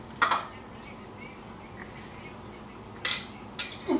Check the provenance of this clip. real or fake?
real